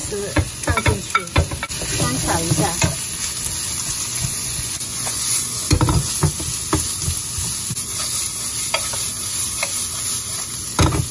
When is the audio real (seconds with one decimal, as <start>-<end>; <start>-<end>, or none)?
0.6-3.8; 5.7-11.1